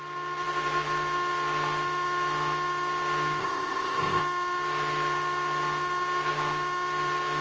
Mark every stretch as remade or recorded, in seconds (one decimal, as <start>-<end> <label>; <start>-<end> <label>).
0.0-3.4 recorded; 3.4-4.2 remade; 4.2-7.4 recorded